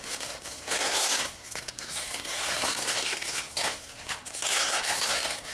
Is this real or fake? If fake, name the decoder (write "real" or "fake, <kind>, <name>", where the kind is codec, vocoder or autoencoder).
fake, codec, SNAC